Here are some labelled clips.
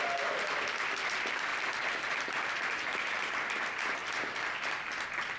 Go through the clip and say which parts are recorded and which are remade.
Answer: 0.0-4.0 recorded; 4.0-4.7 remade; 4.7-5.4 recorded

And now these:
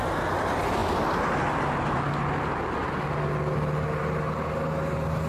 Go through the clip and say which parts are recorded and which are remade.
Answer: 0.0-5.3 recorded

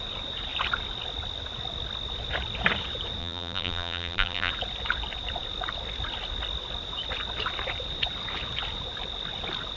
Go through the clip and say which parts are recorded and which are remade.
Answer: 0.0-3.2 recorded; 3.2-4.5 remade; 4.5-9.8 recorded

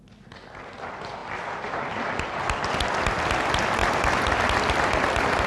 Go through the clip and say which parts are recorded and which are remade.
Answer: 0.0-1.2 recorded; 1.2-2.3 remade; 2.3-5.5 recorded

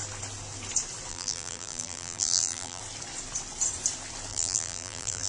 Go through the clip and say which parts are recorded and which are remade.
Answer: 0.0-1.1 recorded; 1.1-2.8 remade; 2.8-4.3 recorded; 4.3-5.3 remade

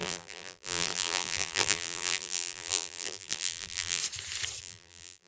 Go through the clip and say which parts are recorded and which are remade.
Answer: 0.0-4.0 remade; 4.0-4.6 recorded; 4.6-5.3 remade

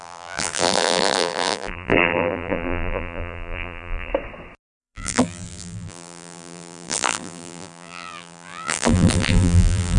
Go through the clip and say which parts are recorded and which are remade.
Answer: 0.0-4.1 remade; 4.1-4.8 recorded; 4.8-10.0 remade